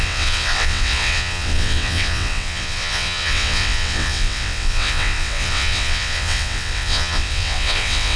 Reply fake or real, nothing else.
fake